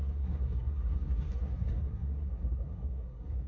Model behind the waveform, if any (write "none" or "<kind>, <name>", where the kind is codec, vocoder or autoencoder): codec, SNAC